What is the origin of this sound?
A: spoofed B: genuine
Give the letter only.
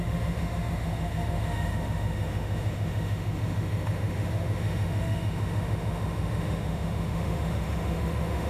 A